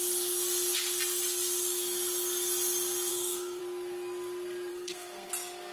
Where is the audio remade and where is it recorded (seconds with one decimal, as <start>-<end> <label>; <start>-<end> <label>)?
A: 0.0-3.1 recorded; 3.1-3.6 remade; 3.6-4.7 recorded; 4.7-5.3 remade; 5.3-5.7 recorded